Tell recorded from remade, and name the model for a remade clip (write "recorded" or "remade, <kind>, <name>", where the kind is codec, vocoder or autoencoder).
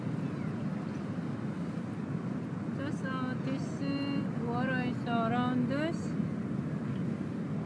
recorded